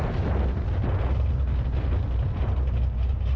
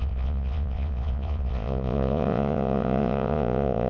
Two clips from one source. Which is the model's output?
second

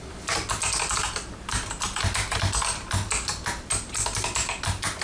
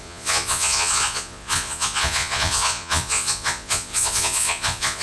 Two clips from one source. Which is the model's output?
second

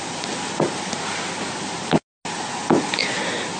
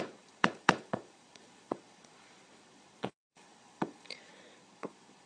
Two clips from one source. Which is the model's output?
second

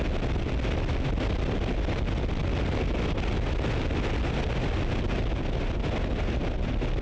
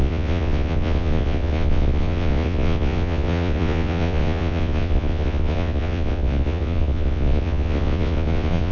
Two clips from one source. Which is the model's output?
second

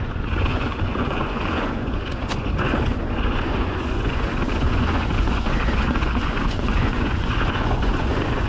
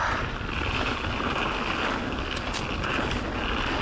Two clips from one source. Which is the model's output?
first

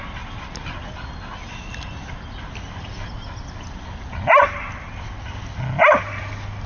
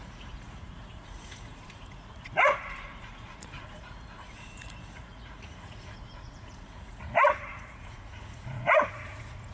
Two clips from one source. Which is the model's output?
second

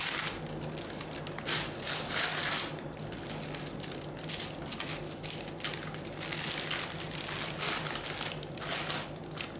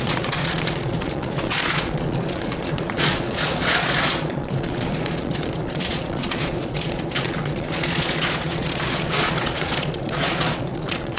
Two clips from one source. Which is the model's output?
second